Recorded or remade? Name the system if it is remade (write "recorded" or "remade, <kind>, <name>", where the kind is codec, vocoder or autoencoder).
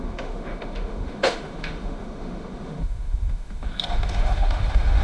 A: remade, autoencoder, DAC-VAE